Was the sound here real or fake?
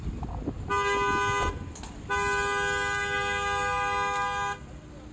real